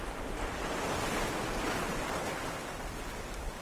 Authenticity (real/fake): real